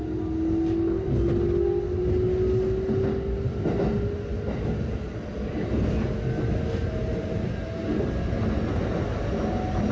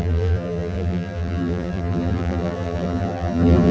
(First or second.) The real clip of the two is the first